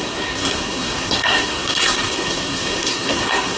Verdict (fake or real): fake